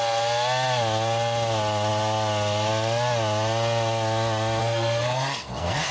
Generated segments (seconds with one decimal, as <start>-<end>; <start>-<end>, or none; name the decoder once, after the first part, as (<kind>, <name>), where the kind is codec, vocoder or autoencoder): 4.6-5.9 (codec, SNAC)